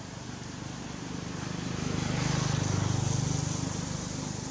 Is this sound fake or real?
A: real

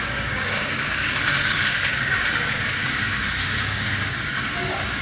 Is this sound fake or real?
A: fake